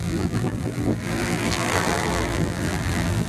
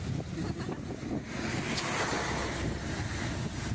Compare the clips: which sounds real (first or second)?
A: second